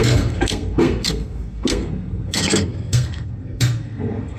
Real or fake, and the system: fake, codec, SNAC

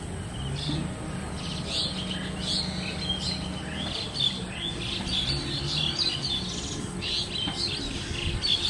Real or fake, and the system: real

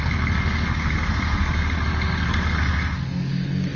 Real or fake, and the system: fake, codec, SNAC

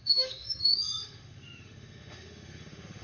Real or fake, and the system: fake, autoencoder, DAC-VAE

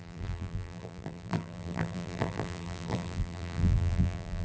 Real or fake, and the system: fake, vocoder, BigVGAN v2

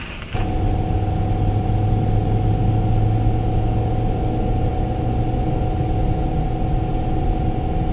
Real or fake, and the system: real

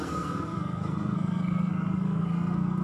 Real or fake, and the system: fake, codec, SNAC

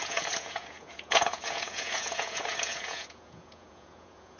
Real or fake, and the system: fake, vocoder, Vocos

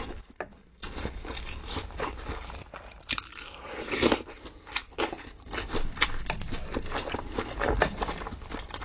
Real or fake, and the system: real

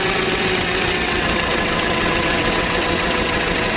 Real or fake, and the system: fake, vocoder, WaveNeXt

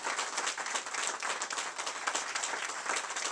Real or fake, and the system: real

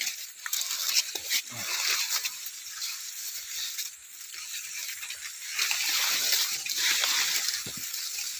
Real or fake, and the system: real